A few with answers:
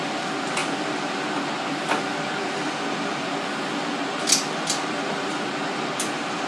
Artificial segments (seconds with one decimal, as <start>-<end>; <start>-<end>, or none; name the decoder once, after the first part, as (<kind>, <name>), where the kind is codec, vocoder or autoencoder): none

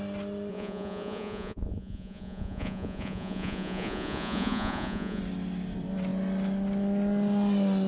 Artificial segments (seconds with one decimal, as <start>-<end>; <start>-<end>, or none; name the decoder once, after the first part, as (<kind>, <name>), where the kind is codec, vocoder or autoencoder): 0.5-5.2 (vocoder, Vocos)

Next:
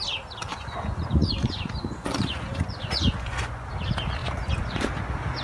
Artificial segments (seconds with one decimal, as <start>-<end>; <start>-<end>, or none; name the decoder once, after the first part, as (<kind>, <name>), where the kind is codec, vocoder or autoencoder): 0.5-3.7 (vocoder, Vocos); 4.2-4.9

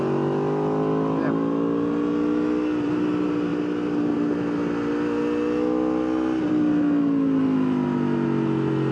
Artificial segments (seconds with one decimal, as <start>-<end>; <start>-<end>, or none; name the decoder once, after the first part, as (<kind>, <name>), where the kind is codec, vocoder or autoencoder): none